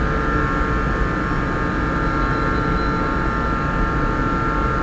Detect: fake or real real